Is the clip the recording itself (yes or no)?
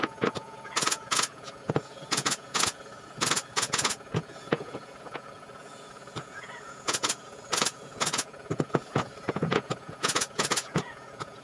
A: no